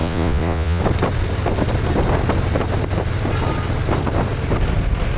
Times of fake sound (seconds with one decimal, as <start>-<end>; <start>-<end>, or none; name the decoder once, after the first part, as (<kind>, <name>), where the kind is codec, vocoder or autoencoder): 0.0-0.8 (vocoder, Vocos)